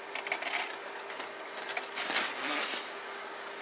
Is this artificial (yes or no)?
no